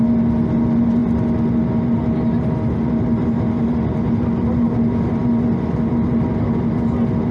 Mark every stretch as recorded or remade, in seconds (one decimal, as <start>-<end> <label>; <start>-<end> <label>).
0.0-7.3 recorded